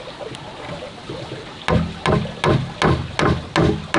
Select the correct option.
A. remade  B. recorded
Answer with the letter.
B